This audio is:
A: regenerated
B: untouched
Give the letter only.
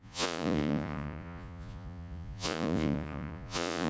A